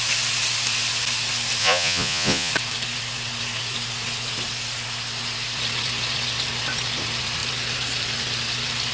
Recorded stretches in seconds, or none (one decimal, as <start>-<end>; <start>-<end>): 0.0-1.6; 2.5-8.9